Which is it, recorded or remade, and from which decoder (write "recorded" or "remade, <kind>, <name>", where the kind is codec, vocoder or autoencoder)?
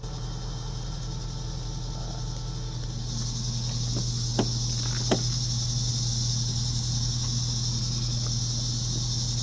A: recorded